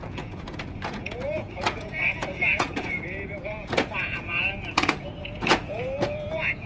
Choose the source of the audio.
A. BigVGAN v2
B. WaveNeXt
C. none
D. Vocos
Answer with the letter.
D